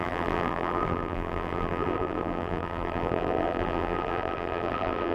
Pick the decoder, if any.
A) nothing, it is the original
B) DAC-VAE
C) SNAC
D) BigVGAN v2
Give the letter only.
D